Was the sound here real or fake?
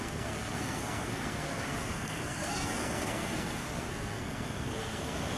fake